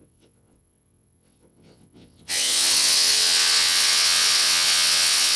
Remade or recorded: remade